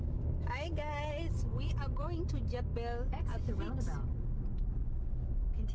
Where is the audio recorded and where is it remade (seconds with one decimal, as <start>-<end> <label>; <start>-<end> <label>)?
0.0-5.7 recorded